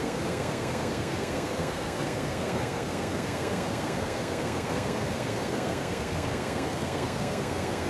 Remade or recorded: remade